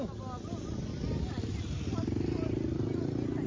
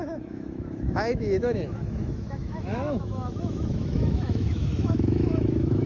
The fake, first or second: second